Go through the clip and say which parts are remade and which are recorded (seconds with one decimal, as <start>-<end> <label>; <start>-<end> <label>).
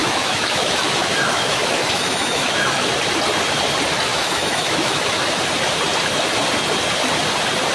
0.0-2.8 remade; 2.8-4.1 recorded; 4.1-5.4 remade; 5.4-7.7 recorded